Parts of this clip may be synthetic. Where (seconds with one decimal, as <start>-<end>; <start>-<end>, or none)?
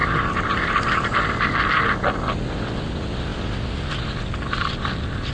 none